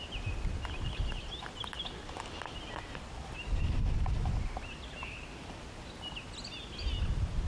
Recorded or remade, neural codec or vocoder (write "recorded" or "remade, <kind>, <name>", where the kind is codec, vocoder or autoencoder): recorded